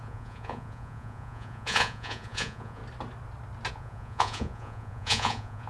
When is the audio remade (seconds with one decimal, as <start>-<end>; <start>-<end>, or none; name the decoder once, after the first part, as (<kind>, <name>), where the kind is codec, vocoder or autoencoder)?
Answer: 0.0-2.8 (vocoder, Vocos); 3.7-5.7